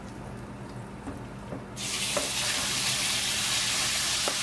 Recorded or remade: remade